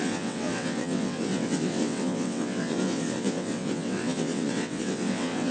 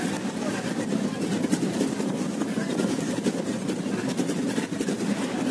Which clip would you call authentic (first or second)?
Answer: second